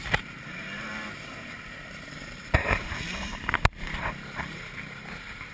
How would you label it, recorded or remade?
remade